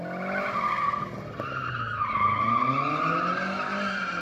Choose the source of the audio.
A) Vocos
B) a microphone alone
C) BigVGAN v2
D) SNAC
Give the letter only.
B